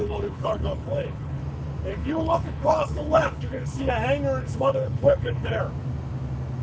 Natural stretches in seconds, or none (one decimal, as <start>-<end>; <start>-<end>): 1.4-1.9; 3.9-4.4; 5.6-6.6